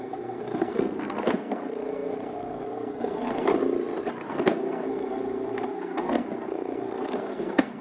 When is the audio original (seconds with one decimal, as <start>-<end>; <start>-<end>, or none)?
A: 3.5-4.3